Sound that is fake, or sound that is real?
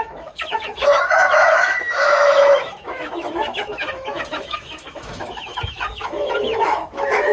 fake